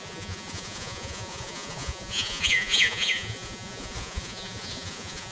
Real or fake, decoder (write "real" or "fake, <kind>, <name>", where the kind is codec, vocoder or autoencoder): fake, vocoder, Vocos